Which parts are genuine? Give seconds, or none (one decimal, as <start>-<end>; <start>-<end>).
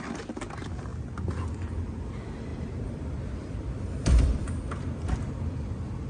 0.0-2.5; 4.7-6.1